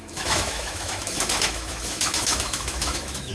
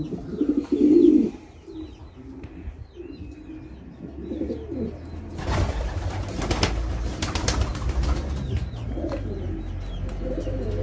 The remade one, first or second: first